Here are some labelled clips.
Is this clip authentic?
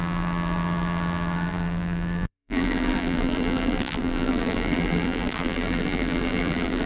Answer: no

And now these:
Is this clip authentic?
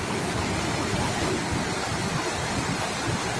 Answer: yes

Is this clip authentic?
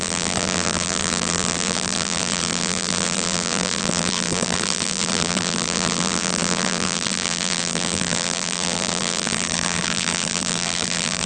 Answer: no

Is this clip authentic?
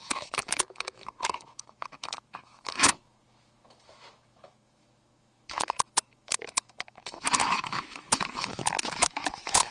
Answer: no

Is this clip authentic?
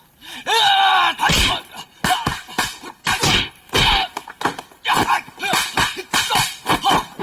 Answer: no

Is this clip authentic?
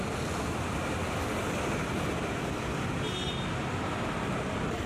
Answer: yes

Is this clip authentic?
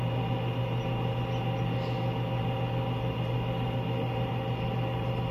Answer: yes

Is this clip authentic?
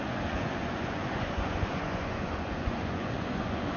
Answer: no